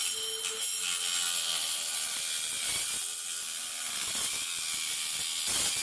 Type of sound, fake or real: real